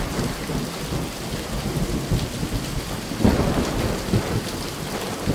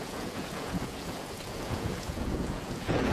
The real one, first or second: first